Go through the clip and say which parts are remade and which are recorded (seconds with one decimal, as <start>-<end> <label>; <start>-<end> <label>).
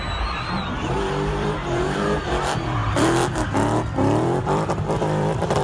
0.0-5.6 remade